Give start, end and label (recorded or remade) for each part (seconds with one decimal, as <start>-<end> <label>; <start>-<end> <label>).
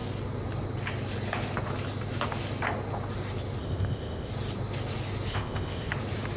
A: 0.0-3.6 recorded; 3.6-4.3 remade; 4.3-5.3 recorded; 5.3-5.9 remade; 5.9-6.4 recorded